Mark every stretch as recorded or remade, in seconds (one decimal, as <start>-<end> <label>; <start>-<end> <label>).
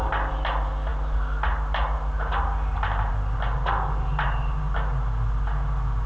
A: 0.0-6.1 recorded